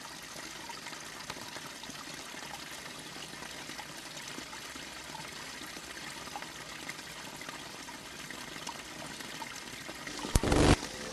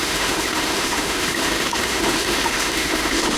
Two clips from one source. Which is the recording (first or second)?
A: first